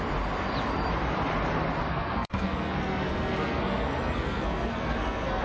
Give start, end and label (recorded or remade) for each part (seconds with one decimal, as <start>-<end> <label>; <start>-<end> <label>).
0.0-1.9 recorded; 1.9-5.4 remade